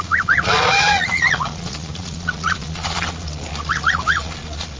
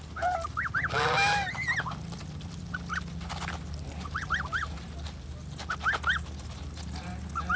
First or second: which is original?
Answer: second